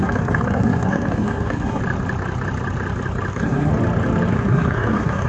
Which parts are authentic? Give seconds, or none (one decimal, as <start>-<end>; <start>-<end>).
1.8-3.3; 3.7-4.3